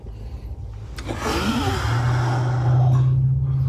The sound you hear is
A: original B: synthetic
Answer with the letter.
A